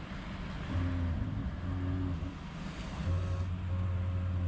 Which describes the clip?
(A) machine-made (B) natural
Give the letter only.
B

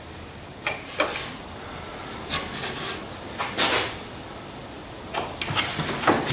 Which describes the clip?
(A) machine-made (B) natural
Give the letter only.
B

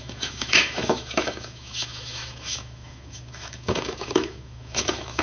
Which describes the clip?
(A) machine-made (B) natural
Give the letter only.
A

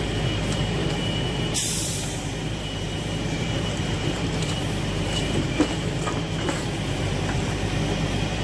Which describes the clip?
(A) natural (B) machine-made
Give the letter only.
B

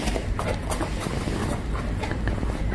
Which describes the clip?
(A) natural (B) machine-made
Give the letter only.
A